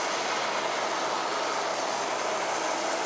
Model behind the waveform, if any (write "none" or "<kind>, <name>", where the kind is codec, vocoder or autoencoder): none